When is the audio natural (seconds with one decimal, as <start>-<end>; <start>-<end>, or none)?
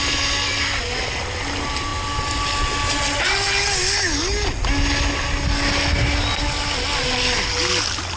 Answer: 0.0-8.2